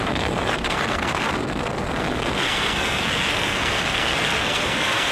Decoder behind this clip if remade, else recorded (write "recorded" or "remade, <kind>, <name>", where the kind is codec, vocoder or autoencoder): remade, codec, SNAC